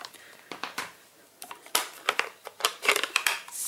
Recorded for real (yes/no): no